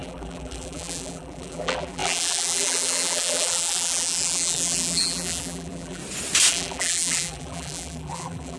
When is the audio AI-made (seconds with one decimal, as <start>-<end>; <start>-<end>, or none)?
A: 0.0-6.0; 6.5-8.6

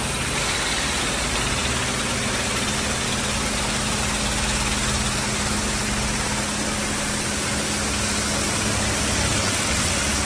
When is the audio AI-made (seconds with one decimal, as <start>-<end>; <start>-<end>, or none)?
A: 9.4-9.9

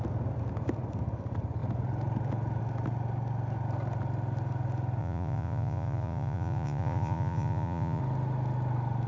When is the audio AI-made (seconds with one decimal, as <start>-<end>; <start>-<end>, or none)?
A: 5.0-8.0

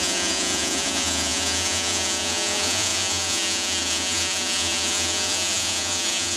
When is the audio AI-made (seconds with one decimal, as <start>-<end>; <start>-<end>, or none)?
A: 0.0-6.4

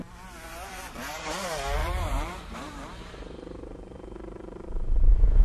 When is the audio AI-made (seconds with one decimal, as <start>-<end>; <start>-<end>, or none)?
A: 1.8-5.0

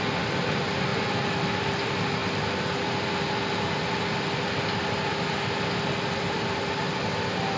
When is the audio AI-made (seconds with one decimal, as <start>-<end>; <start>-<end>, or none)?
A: none

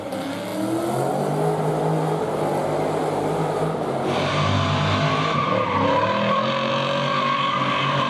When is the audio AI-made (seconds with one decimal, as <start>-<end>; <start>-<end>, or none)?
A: none

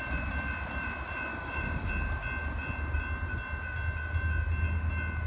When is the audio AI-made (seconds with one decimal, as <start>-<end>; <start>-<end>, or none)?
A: 1.3-1.9